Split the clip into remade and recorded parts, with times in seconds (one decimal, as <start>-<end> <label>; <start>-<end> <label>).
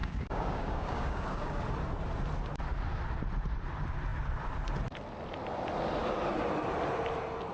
0.0-1.6 remade; 1.6-7.5 recorded